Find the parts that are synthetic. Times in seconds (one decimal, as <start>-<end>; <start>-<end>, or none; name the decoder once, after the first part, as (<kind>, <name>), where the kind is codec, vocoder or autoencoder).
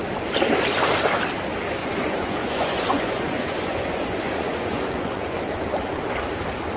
1.8-5.4 (vocoder, Vocos)